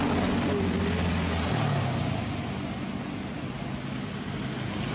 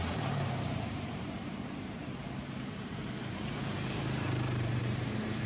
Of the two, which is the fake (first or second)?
second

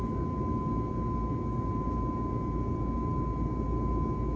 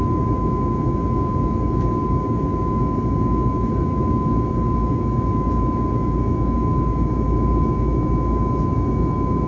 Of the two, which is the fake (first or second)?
second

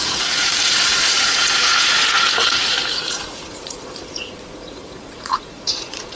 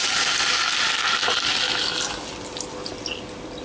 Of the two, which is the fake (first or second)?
first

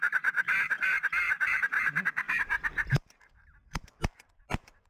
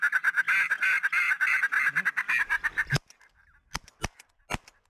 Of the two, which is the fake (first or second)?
first